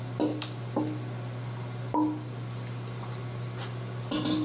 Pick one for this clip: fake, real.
real